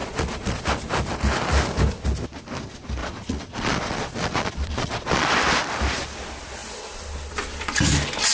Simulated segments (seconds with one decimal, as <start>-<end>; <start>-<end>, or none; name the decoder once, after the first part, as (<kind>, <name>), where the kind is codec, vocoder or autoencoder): 0.0-0.6 (vocoder, Vocos); 3.0-5.3